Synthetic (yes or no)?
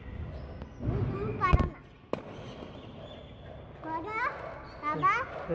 no